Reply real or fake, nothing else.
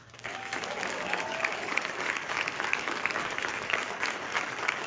fake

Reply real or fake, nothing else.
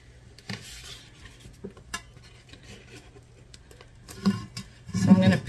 real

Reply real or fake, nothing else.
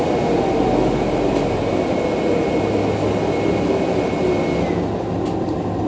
real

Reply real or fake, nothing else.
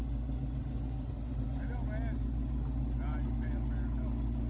real